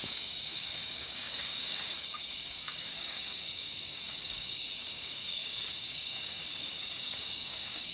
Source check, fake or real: fake